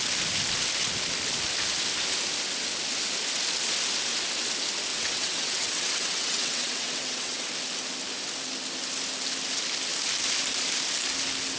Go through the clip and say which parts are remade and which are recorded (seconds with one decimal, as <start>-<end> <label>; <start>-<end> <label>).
0.0-4.9 recorded; 4.9-7.5 remade; 7.5-11.6 recorded